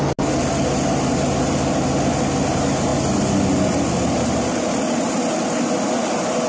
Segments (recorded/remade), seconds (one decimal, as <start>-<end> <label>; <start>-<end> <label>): 0.0-6.5 recorded